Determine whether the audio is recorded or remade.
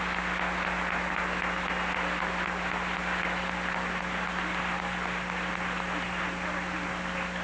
recorded